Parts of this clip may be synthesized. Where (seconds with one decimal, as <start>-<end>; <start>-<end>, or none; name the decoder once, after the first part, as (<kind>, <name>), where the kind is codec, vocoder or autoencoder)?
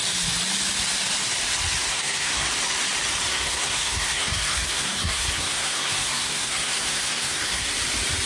1.9-2.5 (codec, SNAC); 3.3-7.7